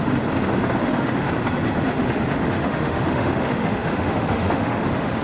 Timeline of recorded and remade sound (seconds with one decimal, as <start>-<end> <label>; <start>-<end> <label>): 0.0-0.8 recorded; 0.8-1.3 remade; 1.3-1.9 recorded; 1.9-5.2 remade

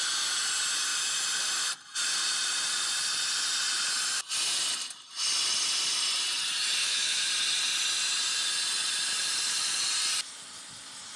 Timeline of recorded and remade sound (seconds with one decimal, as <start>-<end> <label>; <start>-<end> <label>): 0.0-6.8 recorded; 6.8-7.3 remade; 7.3-11.2 recorded

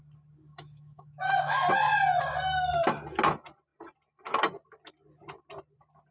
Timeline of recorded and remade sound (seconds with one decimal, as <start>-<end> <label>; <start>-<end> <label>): 0.0-0.5 recorded; 0.5-1.7 remade; 1.7-6.1 recorded

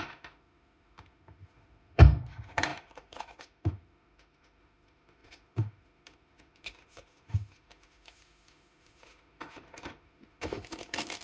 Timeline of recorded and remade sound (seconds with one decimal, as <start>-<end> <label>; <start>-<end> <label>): 0.0-11.2 remade

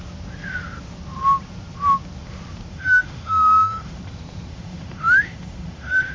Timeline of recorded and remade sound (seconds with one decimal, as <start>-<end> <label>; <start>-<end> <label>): 0.0-2.7 recorded; 2.7-4.0 remade; 4.0-4.5 recorded; 4.5-6.1 remade

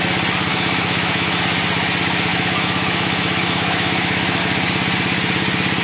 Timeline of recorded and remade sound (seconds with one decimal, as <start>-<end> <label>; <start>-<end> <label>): 0.0-0.5 recorded; 0.5-1.4 remade; 1.4-2.3 recorded; 2.3-4.4 remade; 4.4-5.8 recorded

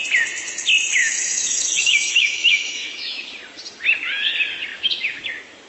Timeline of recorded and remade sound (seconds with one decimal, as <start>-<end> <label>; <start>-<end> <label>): 0.0-1.0 recorded; 1.0-3.3 remade; 3.3-4.7 recorded; 4.7-5.2 remade; 5.2-5.7 recorded